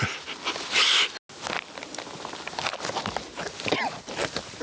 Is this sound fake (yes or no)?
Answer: no